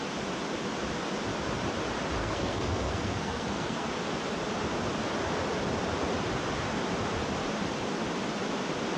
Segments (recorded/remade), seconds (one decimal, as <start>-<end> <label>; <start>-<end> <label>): 0.0-2.2 recorded; 2.2-3.9 remade; 3.9-9.0 recorded